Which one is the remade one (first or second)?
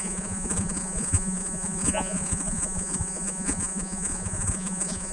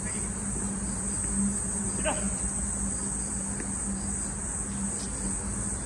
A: first